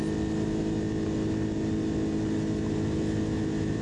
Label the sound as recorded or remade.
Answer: recorded